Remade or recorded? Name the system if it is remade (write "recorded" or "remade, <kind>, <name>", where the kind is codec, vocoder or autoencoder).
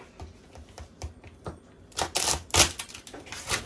recorded